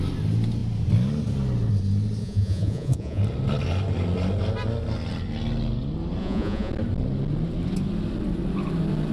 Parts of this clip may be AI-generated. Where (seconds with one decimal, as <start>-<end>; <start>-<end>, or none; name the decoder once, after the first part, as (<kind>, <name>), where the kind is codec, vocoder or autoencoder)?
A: 2.2-3.2 (vocoder, Vocos); 6.2-6.7